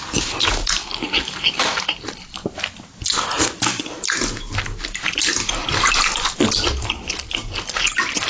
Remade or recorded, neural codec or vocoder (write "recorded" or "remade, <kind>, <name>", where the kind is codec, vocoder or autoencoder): recorded